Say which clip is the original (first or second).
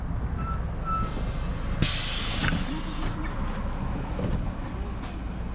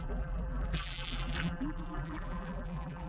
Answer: first